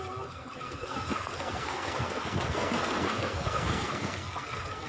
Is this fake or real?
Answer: fake